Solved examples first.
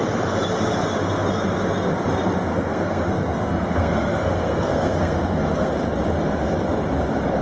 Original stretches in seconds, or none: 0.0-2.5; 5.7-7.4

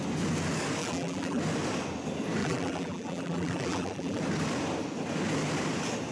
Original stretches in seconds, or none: 0.0-0.8; 1.4-2.4; 4.2-6.1